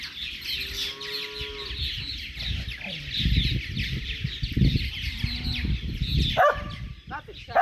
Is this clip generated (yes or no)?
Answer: no